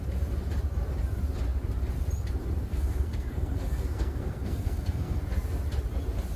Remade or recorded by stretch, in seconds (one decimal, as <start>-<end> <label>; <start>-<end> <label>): 0.0-2.7 recorded; 2.7-5.2 remade; 5.2-6.4 recorded